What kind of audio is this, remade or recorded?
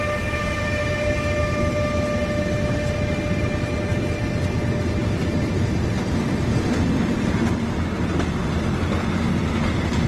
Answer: recorded